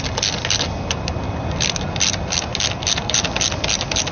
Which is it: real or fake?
real